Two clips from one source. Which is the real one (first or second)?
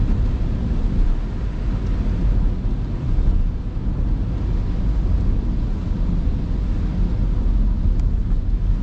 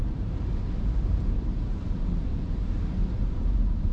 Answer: first